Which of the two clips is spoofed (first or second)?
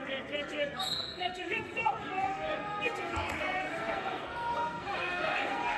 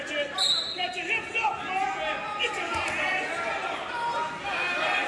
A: first